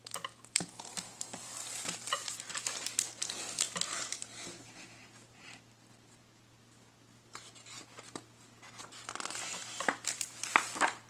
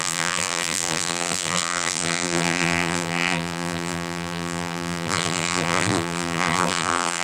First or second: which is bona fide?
first